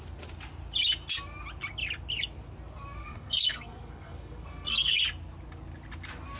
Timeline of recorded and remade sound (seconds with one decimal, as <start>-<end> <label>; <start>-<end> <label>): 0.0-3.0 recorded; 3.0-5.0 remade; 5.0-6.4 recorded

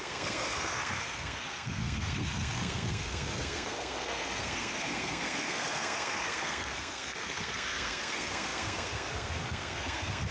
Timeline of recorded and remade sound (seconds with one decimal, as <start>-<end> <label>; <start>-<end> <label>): 0.0-10.3 remade

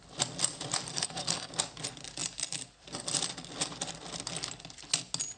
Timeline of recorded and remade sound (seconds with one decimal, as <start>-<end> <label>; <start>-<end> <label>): 0.0-0.9 recorded; 0.9-1.5 remade; 1.5-5.4 recorded